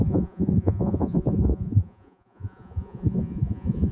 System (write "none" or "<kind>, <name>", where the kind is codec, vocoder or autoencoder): vocoder, Vocos